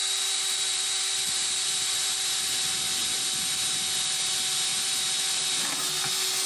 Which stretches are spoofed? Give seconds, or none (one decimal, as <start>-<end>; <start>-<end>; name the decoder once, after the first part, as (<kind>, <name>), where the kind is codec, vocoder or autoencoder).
0.0-2.4 (vocoder, BigVGAN v2); 3.0-3.8; 4.7-5.9